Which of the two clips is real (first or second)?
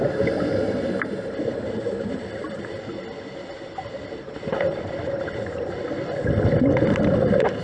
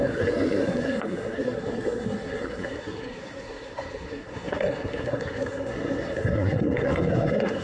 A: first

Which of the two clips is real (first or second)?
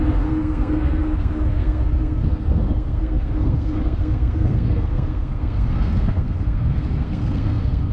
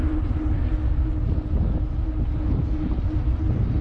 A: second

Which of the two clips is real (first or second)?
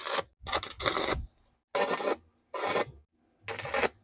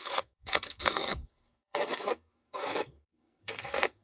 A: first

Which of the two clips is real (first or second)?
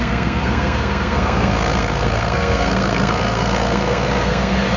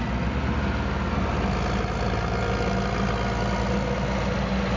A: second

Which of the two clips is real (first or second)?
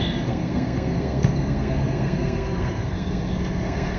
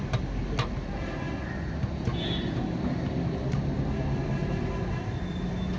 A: second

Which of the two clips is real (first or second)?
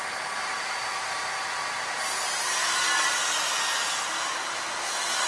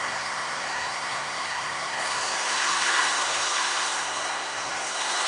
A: first